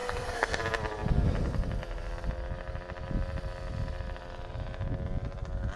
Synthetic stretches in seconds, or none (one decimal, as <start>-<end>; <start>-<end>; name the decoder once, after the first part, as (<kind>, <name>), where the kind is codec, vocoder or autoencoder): 0.0-0.6 (codec, SNAC)